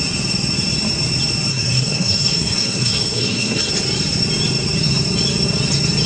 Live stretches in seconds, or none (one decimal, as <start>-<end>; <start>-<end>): 0.0-1.5; 3.7-6.1